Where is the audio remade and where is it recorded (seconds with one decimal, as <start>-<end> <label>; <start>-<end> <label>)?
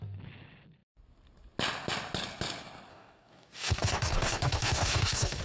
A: 0.0-2.9 recorded; 2.9-5.4 remade